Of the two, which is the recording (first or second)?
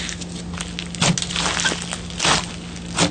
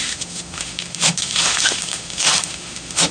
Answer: first